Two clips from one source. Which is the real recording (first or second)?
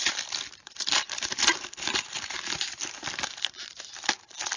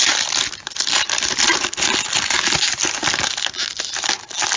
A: second